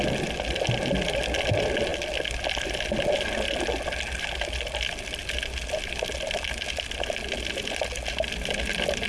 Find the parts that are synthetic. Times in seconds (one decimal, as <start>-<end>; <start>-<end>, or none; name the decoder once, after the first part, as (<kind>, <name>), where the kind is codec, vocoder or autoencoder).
none